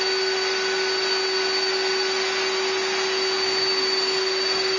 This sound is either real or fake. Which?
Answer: real